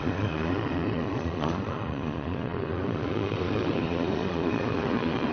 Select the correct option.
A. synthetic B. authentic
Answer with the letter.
A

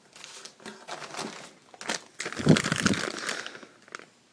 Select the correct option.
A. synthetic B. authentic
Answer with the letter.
B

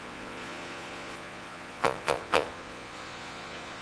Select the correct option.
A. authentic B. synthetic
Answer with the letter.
B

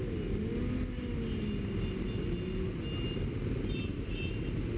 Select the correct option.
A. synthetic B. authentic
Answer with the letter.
B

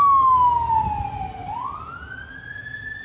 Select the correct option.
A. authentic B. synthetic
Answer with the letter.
A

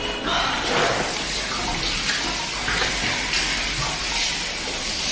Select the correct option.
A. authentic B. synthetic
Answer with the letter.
A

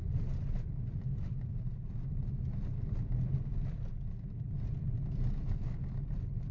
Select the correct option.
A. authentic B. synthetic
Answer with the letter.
A